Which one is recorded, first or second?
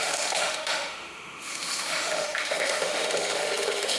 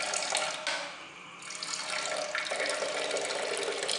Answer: second